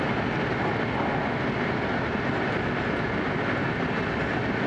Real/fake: real